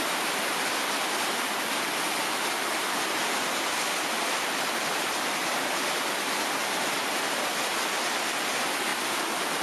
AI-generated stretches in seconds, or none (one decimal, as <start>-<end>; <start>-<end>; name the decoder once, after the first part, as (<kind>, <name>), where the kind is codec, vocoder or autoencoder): 8.9-9.6 (vocoder, BigVGAN v2)